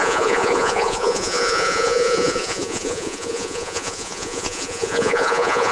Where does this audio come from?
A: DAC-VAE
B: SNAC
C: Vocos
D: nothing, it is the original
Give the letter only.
C